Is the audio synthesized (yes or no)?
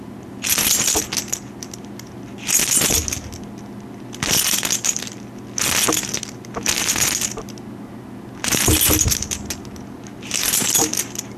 no